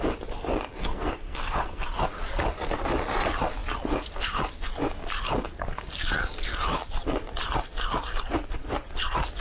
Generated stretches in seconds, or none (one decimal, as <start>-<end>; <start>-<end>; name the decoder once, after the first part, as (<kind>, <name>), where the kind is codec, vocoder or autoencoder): 0.8-1.8 (codec, SNAC)